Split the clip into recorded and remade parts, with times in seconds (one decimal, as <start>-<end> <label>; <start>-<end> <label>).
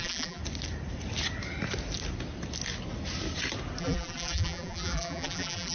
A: 0.0-0.4 remade; 0.4-3.8 recorded; 3.8-5.7 remade